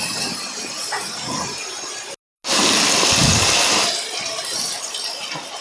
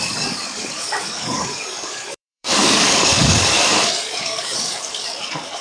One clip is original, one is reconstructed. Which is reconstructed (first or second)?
second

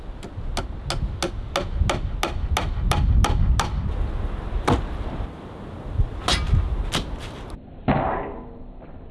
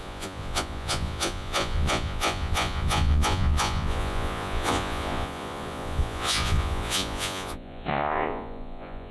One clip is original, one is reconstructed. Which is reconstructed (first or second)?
second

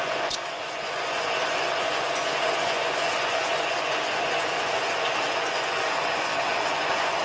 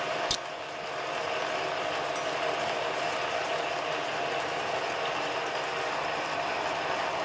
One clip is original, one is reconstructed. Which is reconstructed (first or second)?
first